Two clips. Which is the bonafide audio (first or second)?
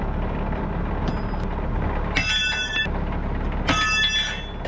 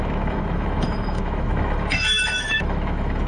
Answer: first